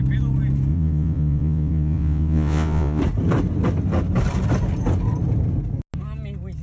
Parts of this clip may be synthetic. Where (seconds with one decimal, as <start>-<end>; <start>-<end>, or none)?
0.7-3.0